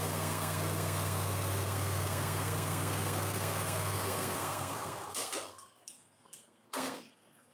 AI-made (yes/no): yes